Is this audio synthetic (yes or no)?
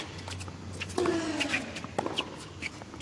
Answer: no